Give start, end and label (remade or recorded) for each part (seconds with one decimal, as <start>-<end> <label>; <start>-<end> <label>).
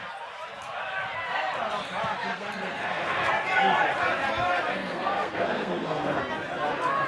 0.0-2.3 recorded; 2.3-3.3 remade; 3.3-4.7 recorded; 4.7-6.2 remade; 6.2-7.1 recorded